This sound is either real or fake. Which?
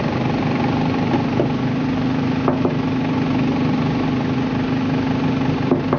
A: real